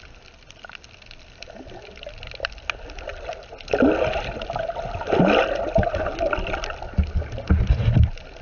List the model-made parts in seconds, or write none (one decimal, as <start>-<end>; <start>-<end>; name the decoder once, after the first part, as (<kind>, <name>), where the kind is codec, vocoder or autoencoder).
none